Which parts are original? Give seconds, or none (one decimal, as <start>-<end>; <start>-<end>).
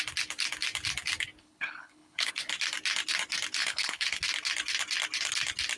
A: 0.0-1.4; 2.3-3.6; 4.2-5.8